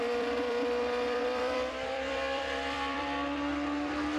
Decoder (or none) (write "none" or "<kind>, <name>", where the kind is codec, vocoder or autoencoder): vocoder, BigVGAN v2